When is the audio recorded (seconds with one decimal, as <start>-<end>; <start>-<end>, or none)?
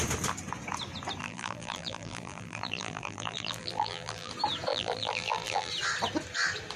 0.0-1.2; 4.3-4.7; 5.7-6.8